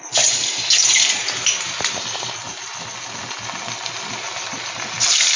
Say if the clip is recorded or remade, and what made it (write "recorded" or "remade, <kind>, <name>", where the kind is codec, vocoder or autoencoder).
recorded